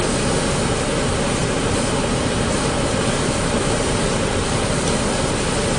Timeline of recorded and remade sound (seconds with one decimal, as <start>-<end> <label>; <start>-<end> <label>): 0.0-1.4 recorded; 1.4-4.9 remade; 4.9-5.8 recorded